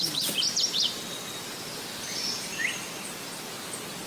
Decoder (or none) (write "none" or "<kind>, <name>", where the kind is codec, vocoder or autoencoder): none